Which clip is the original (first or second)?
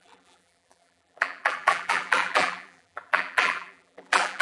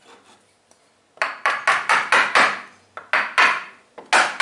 second